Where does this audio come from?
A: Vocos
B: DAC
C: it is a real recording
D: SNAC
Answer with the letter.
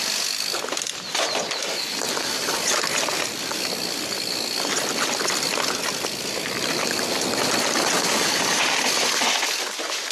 C